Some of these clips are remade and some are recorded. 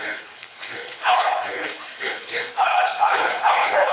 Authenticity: remade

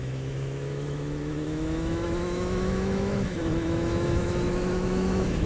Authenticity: remade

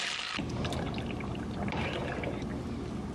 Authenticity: remade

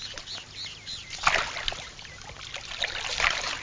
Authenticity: recorded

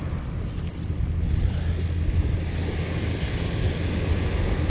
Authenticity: recorded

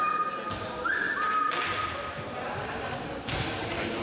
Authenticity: recorded